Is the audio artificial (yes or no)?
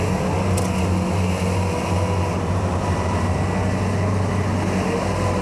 no